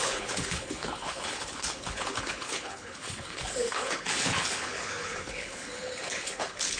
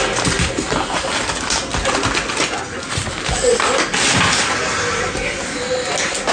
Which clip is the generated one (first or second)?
first